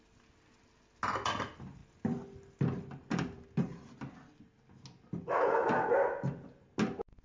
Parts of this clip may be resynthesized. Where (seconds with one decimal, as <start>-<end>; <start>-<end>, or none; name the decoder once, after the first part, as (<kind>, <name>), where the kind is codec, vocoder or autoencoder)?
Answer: none